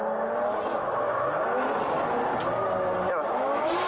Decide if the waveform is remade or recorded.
recorded